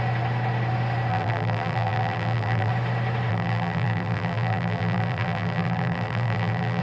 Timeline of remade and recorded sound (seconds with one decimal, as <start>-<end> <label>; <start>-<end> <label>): 0.0-1.1 recorded; 1.1-2.7 remade; 2.7-3.3 recorded; 3.3-6.8 remade